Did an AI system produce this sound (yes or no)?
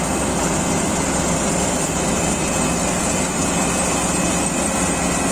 no